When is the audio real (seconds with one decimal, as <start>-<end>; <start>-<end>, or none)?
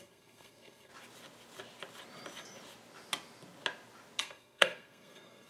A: 0.9-4.2